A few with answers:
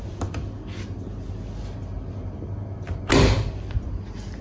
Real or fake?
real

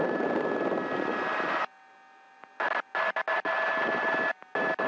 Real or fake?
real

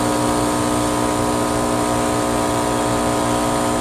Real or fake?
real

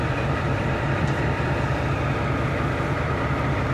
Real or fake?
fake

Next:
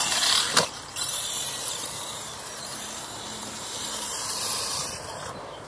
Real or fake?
fake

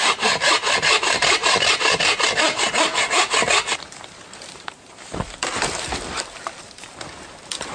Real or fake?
fake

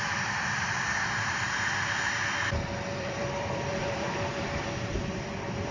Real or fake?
fake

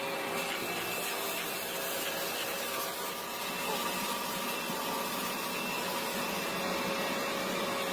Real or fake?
real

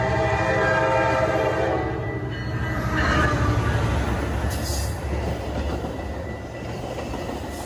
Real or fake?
real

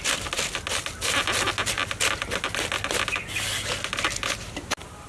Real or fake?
real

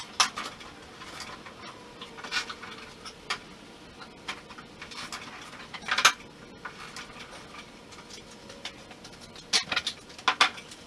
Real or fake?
real